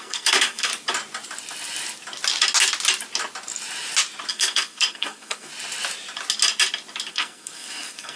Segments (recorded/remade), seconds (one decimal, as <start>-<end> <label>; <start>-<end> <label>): 0.0-0.7 remade; 0.7-4.3 recorded; 4.3-5.5 remade; 5.5-7.1 recorded; 7.1-8.2 remade